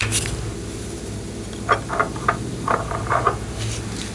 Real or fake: real